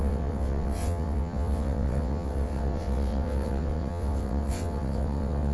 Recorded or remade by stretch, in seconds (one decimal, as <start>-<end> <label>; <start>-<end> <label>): 0.0-5.5 remade